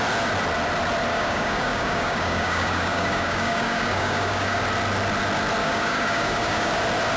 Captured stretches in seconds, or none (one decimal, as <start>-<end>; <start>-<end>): 0.0-1.1; 4.6-5.6; 6.7-7.2